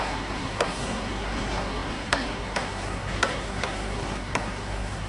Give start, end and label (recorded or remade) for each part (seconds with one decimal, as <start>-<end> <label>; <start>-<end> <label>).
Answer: 0.0-5.1 remade